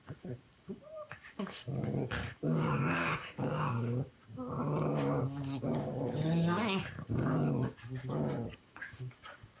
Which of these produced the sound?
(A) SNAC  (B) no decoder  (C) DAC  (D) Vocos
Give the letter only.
C